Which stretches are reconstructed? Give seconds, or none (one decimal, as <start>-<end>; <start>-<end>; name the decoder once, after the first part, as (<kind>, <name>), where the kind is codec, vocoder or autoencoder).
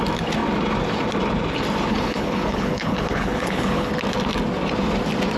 1.9-3.9 (codec, HILCodec)